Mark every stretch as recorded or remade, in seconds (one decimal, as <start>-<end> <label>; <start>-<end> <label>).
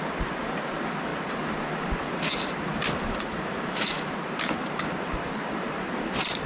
0.0-6.5 remade